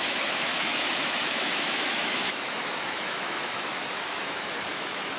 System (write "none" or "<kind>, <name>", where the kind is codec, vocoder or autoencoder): autoencoder, DAC-VAE